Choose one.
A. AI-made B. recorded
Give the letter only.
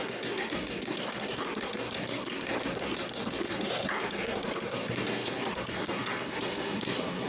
A